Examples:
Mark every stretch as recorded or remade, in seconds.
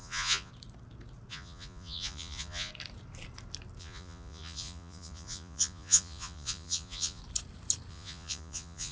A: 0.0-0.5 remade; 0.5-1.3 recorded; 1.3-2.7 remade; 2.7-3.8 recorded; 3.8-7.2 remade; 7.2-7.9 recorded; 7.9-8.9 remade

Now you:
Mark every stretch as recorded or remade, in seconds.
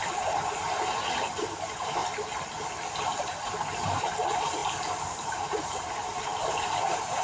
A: 0.0-2.0 remade; 2.0-3.2 recorded; 3.2-7.2 remade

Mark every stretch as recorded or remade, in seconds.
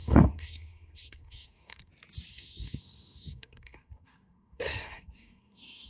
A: 0.0-1.9 remade; 1.9-2.3 recorded; 2.3-5.9 remade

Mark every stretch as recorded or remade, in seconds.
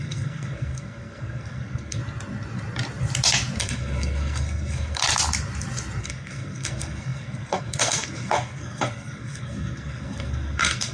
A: 0.0-2.0 remade; 2.0-3.6 recorded; 3.6-5.0 remade; 5.0-6.0 recorded; 6.0-10.9 remade